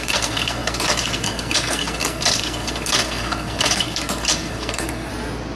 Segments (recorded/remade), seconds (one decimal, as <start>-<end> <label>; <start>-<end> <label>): 0.0-5.1 remade; 5.1-5.6 recorded